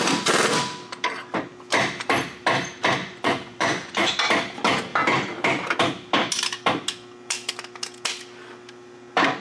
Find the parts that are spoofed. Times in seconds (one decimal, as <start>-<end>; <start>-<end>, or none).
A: 3.0-4.1